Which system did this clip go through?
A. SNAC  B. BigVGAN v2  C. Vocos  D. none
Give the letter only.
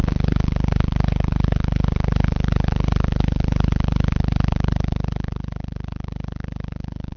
B